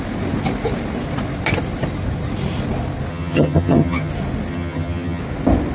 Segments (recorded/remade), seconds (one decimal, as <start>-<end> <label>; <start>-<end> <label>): 0.0-3.1 recorded; 3.1-4.1 remade; 4.1-4.5 recorded; 4.5-5.2 remade; 5.2-5.7 recorded